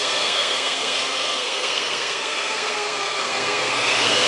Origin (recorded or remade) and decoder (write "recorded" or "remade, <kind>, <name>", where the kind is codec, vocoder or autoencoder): remade, codec, SNAC